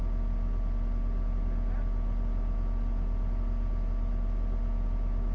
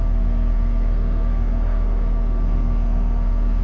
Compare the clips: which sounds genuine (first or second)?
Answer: first